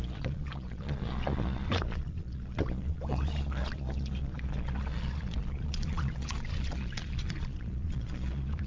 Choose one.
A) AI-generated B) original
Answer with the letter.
A